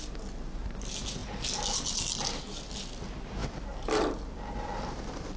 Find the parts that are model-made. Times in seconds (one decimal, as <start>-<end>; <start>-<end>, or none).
3.4-5.4